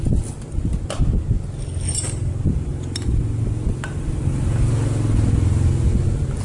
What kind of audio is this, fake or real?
real